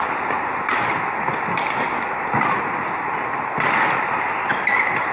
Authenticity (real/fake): real